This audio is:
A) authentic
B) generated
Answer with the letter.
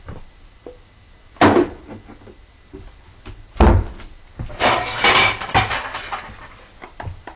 A